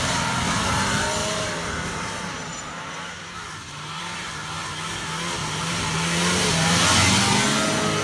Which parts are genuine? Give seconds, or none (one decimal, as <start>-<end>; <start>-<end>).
0.0-1.2; 4.0-5.4; 6.8-8.0